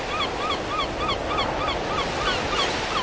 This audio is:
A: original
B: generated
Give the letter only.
A